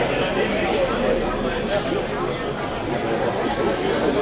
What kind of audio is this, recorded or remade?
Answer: recorded